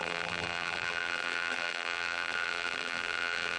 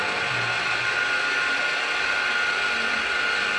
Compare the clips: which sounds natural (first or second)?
second